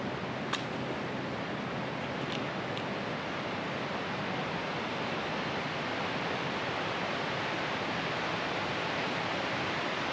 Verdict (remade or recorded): recorded